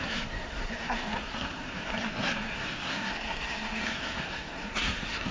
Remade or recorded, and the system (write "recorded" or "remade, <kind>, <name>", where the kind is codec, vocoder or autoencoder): remade, codec, SNAC